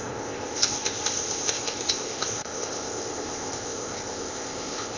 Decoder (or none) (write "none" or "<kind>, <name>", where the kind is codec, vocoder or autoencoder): codec, ZipCodec